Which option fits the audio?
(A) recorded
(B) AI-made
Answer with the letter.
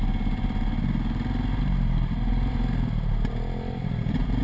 A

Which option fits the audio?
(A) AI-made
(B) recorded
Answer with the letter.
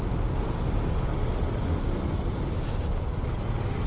B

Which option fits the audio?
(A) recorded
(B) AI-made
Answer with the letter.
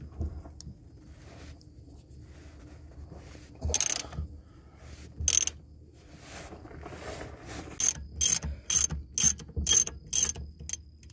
A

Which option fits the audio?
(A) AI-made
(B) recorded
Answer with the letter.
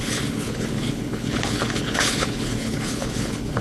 A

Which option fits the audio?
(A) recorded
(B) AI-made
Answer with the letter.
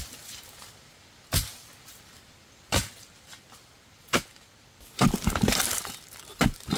A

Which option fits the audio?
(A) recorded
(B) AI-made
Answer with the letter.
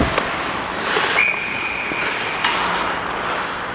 A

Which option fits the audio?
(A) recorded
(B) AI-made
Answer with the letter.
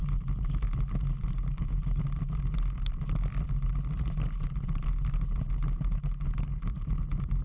A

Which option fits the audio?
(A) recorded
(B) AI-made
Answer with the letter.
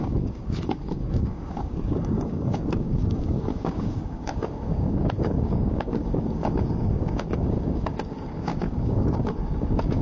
B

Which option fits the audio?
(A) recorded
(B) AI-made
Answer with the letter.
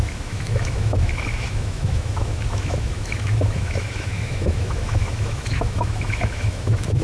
B